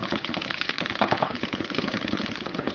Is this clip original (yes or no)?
no